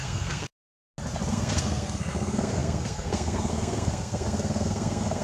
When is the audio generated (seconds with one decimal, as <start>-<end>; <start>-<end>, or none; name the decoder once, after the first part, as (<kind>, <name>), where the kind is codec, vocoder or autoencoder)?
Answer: 0.0-0.5 (codec, SNAC); 1.3-5.2